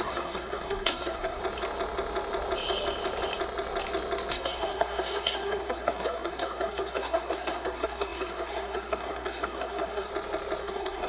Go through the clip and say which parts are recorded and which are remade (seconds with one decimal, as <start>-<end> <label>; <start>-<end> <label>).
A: 0.0-1.4 remade; 1.4-4.3 recorded; 4.3-10.1 remade; 10.1-10.6 recorded; 10.6-11.1 remade